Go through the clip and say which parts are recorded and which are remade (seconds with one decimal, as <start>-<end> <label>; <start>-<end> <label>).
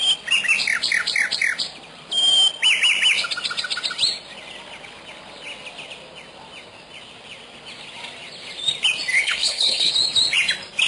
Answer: 0.0-9.1 recorded; 9.1-9.9 remade; 9.9-10.9 recorded